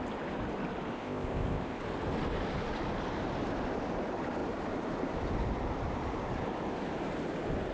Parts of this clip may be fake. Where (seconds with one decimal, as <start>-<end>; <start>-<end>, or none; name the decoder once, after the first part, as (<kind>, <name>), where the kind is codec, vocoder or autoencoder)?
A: 0.9-1.8 (codec, ZipCodec)